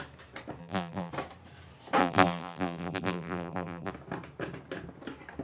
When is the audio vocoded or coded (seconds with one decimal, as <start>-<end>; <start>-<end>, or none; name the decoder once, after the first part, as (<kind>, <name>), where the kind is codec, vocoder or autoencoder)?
0.6-1.1 (vocoder, BigVGAN v2); 2.0-3.9